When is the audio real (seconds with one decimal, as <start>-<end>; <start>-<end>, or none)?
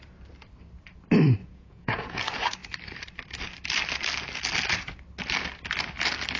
0.0-1.4; 2.2-6.4